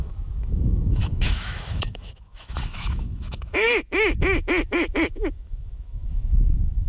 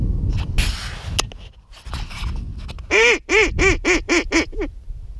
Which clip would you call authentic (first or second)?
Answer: second